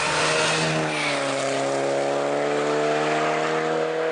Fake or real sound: real